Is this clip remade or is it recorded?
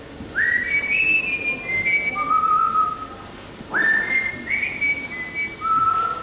recorded